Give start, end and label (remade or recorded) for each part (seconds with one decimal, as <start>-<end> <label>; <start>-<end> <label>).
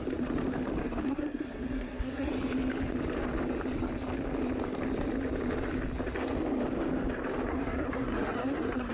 0.0-0.8 recorded; 0.8-2.3 remade; 2.3-7.5 recorded; 7.5-8.9 remade